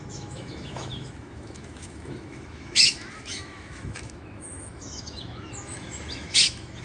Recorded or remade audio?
remade